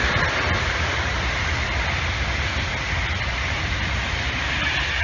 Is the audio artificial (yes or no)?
no